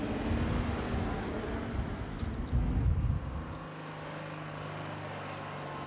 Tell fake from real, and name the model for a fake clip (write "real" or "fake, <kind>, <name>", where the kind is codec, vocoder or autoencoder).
real